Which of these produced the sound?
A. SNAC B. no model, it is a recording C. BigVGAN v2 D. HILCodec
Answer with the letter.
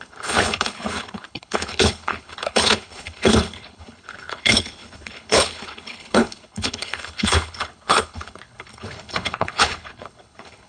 D